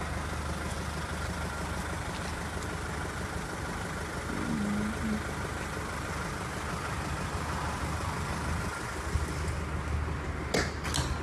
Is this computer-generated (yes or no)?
no